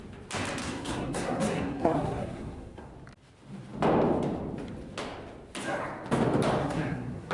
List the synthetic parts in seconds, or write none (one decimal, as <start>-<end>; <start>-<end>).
0.6-2.9; 6.6-7.3